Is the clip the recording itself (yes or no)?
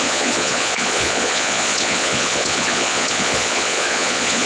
no